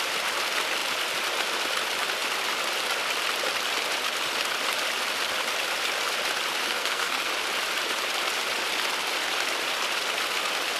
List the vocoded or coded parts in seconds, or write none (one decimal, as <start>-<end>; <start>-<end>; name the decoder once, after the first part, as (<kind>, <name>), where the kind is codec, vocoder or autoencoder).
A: 6.6-7.3 (codec, SNAC)